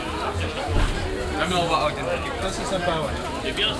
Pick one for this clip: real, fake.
real